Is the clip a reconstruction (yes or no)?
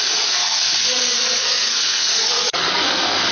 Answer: yes